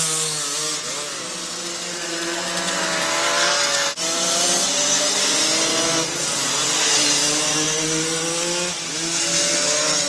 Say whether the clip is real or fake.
real